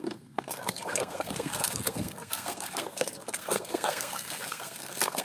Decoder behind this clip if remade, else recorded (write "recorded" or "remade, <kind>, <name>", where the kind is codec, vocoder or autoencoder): remade, codec, SNAC